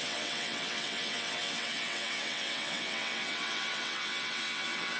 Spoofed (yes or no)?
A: yes